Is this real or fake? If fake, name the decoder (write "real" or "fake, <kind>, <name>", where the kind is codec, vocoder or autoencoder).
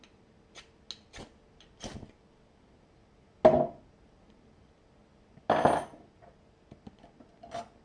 real